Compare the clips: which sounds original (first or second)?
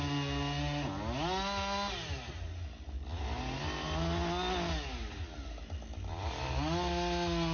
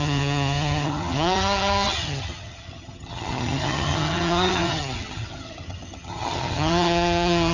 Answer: first